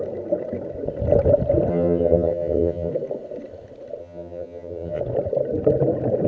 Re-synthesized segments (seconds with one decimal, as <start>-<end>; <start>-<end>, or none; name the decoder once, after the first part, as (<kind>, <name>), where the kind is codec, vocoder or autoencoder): 1.7-2.9 (vocoder, HiFi-GAN); 4.0-5.0